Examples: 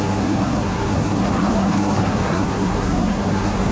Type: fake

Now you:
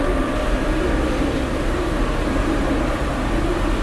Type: real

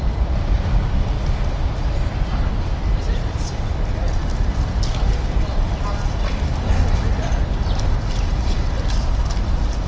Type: real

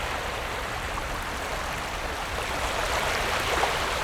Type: real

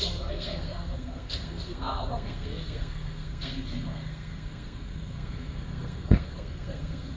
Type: fake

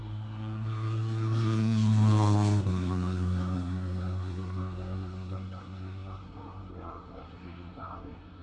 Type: fake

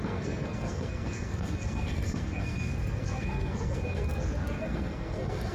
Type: fake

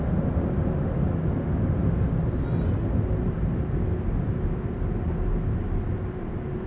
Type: real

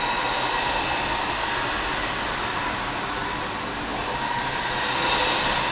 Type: real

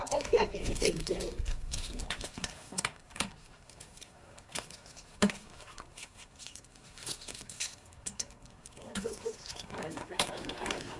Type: fake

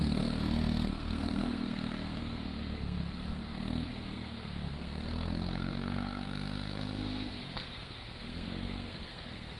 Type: fake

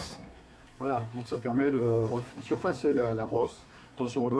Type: fake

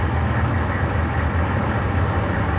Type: real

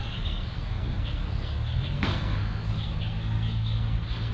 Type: fake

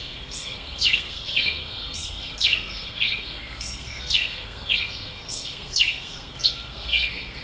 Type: fake